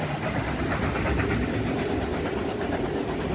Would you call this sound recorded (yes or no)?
yes